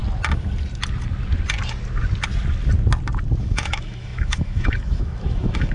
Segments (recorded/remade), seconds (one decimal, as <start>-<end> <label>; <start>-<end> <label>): 0.0-3.4 recorded; 3.4-5.7 remade